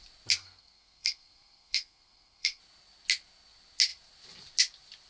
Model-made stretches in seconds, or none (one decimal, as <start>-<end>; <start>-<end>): 0.4-2.6